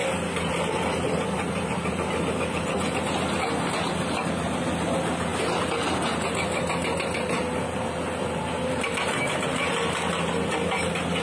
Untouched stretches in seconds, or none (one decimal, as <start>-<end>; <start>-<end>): 3.0-11.2